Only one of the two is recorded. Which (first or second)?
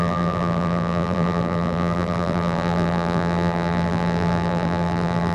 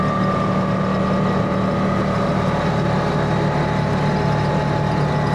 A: second